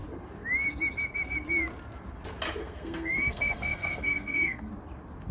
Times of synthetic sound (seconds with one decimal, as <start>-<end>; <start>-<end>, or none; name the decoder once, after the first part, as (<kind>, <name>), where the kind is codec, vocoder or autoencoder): 2.6-4.7 (codec, SNAC)